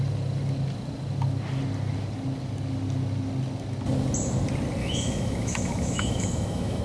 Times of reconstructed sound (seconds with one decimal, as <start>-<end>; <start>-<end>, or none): 4.8-6.8